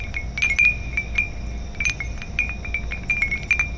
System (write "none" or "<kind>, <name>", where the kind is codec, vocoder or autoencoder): none